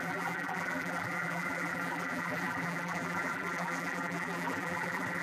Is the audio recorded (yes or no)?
no